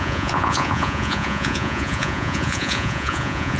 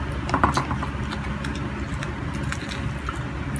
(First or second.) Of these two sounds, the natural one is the second